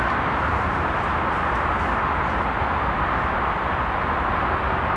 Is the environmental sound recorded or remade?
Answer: recorded